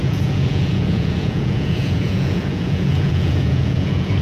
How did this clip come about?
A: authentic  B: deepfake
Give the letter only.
B